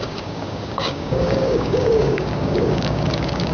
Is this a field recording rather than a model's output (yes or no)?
no